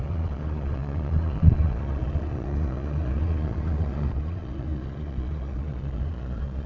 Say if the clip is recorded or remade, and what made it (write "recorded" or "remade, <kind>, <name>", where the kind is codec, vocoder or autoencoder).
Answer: remade, vocoder, Vocos